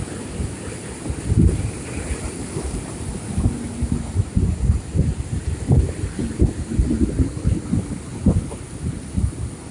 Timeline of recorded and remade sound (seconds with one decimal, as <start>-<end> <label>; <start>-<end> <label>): 0.0-9.7 recorded